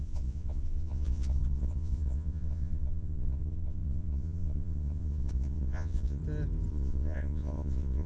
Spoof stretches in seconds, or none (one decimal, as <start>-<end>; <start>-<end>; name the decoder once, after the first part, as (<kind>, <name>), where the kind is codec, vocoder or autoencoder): 0.0-6.2 (vocoder, Vocos); 6.7-8.1